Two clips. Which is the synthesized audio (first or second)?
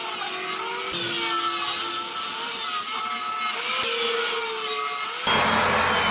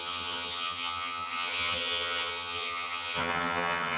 second